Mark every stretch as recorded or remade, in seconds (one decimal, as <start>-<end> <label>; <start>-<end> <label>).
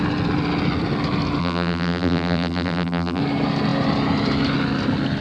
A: 0.0-1.4 recorded; 1.4-3.2 remade; 3.2-5.2 recorded